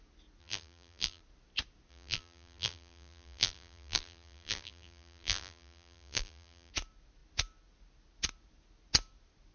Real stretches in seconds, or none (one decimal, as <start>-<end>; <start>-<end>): 0.0-0.4; 1.2-1.9; 6.7-9.5